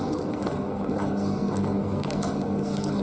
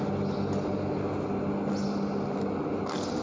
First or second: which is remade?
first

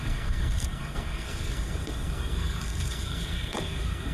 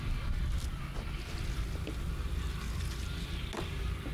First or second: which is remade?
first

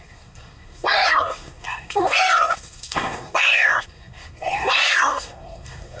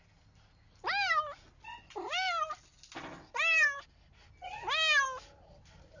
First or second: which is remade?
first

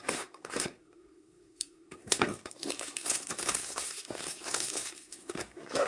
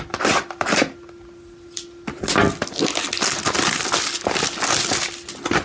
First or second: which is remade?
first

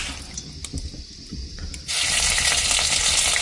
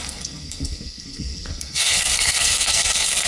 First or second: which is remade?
second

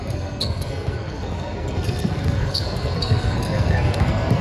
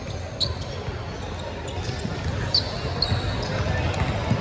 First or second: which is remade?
first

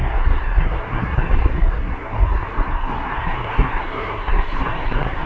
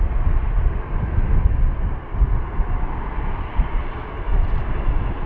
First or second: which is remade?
first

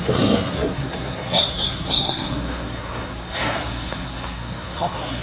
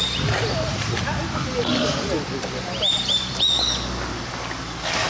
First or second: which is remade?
first